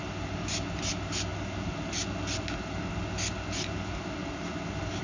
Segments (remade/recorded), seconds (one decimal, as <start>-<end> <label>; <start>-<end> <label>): 0.0-5.0 recorded